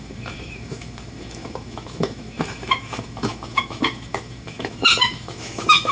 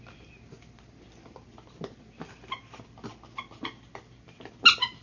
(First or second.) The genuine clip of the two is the second